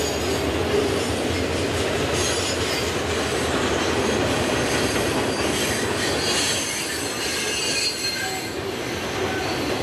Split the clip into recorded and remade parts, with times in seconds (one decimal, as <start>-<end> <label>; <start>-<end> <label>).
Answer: 0.0-3.3 recorded; 3.3-5.3 remade; 5.3-9.8 recorded